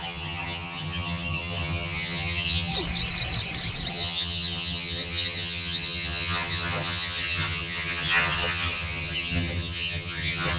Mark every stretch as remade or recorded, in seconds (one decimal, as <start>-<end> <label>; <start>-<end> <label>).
0.0-2.7 remade; 2.7-3.9 recorded; 3.9-10.6 remade